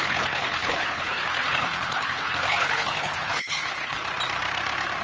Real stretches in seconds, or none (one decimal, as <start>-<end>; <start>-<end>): 4.0-5.0